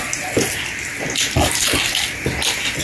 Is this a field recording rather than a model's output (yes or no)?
yes